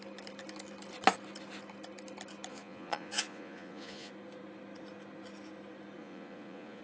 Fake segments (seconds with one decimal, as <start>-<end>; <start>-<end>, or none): 2.5-4.1; 6.0-6.8